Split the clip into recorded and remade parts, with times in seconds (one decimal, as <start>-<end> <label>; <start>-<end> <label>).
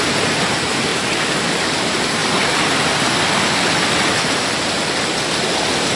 0.0-0.9 remade; 0.9-1.6 recorded; 1.6-2.2 remade; 2.2-4.2 recorded; 4.2-4.8 remade; 4.8-5.6 recorded; 5.6-6.0 remade